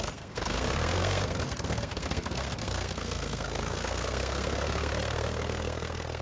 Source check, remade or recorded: remade